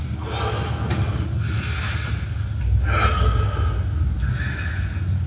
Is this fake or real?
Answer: real